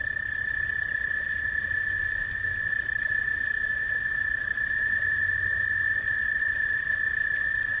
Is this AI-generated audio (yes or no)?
no